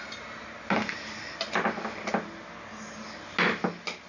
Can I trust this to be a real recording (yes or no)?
yes